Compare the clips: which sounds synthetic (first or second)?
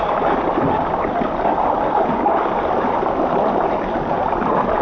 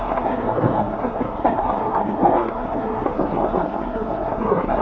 second